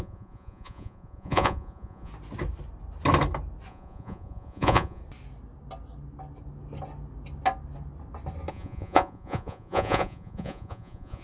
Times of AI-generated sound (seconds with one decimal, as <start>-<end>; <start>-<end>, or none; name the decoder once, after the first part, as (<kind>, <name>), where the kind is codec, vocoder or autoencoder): 0.0-2.1 (vocoder, Vocos); 3.7-5.0; 8.5-11.2